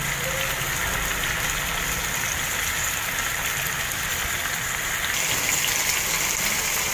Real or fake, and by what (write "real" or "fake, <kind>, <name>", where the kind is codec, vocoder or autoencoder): real